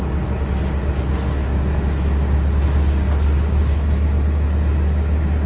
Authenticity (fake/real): real